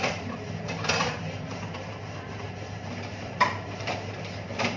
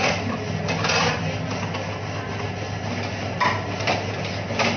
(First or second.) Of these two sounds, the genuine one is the second